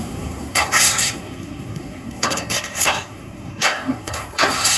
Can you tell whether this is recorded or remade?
remade